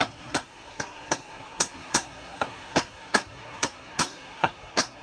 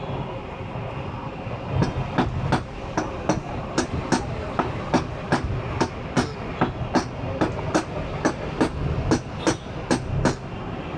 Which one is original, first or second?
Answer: second